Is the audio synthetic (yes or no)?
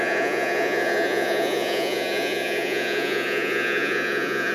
yes